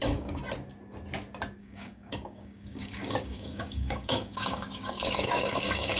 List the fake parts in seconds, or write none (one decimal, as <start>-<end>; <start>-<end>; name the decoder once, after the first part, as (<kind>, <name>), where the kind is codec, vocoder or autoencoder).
0.0-0.4 (codec, DAC); 1.6-6.0